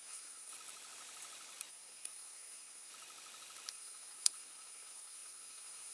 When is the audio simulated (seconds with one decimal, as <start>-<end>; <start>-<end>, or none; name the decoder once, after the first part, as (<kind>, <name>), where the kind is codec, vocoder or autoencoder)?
0.0-0.5 (codec, SNAC); 1.7-2.9; 3.7-5.9

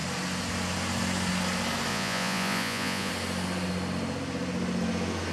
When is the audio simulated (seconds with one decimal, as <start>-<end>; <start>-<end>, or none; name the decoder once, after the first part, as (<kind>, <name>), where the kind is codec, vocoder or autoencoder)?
1.9-3.1 (vocoder, Vocos)

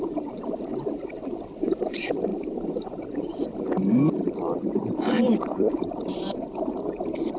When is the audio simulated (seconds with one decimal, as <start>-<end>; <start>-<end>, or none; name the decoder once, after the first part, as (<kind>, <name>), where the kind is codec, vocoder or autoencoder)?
0.0-0.7 (vocoder, BigVGAN v2); 1.7-7.4

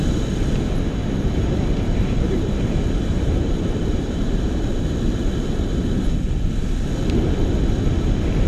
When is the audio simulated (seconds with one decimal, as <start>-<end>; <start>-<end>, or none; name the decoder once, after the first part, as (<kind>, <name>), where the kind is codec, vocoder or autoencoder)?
1.0-4.7 (vocoder, BigVGAN v2)

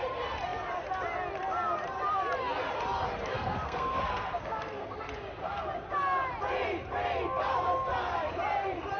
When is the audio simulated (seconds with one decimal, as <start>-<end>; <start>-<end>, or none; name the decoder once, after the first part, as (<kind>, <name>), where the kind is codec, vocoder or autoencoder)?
3.3-5.0 (codec, SNAC)

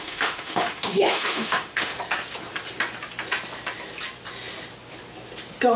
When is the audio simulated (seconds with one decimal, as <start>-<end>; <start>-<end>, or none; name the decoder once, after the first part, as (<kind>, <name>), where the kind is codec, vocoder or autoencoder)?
0.0-1.9 (autoencoder, DAC-VAE)